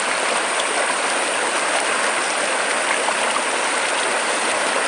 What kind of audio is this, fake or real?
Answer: real